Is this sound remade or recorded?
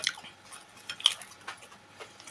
recorded